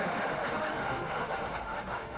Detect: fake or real fake